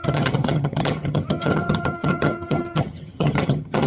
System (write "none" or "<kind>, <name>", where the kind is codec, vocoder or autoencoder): vocoder, HiFi-GAN